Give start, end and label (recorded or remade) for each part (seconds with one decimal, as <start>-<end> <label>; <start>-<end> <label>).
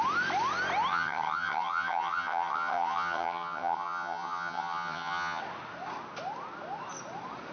0.0-0.9 recorded; 0.9-5.4 remade; 5.4-7.5 recorded